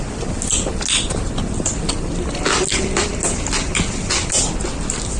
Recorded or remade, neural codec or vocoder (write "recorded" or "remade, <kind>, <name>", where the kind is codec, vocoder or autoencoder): recorded